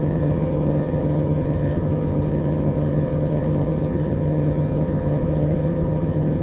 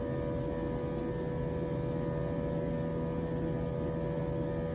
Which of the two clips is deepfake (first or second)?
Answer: first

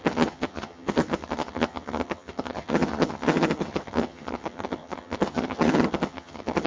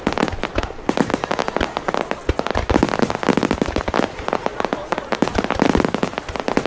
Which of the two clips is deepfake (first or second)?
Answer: first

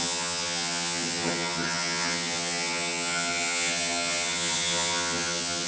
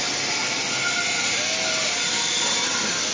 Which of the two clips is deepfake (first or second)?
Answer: first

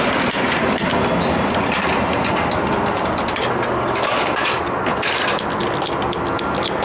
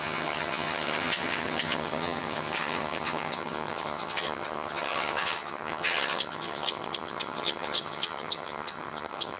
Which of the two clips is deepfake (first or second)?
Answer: second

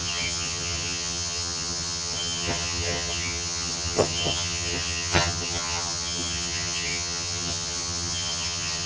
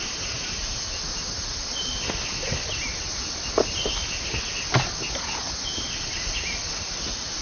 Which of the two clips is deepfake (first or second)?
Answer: first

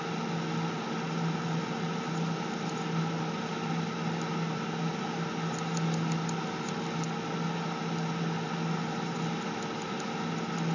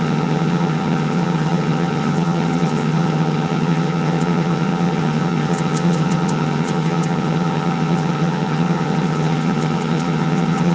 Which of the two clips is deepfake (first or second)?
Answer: second